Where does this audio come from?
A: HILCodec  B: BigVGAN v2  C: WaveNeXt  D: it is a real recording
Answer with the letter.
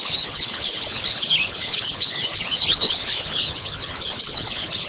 A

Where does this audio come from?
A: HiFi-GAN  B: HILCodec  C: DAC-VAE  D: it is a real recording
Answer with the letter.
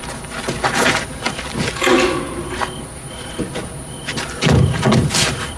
D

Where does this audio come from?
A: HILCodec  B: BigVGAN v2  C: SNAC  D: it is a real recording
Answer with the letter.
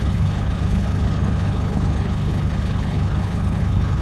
A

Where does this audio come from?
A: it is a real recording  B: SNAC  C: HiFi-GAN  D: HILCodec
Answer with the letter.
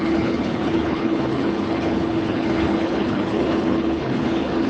D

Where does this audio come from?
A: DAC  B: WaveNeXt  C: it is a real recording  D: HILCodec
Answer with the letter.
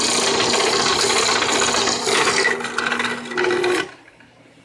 C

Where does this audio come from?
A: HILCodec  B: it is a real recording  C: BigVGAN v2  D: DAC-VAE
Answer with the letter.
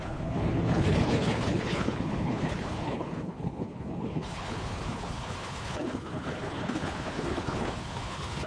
A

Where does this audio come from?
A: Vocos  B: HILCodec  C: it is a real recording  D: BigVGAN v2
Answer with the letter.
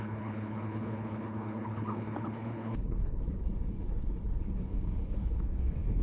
B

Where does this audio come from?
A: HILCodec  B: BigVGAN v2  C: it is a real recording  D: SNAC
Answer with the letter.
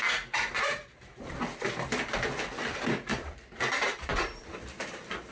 C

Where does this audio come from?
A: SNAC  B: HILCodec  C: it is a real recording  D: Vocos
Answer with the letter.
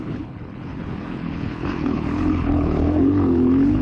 B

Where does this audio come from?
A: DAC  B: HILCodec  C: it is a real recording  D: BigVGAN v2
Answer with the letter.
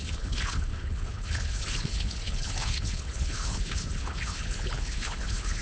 B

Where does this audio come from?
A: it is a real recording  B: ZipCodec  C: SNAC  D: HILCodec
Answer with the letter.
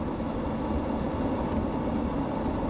A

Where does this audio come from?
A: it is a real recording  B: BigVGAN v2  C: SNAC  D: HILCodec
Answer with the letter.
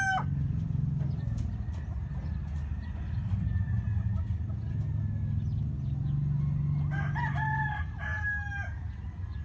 A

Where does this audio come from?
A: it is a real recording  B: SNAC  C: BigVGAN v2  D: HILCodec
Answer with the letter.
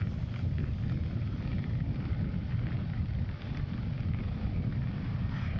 A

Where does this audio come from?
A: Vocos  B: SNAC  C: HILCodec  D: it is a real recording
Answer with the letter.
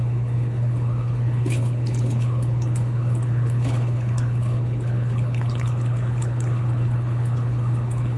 C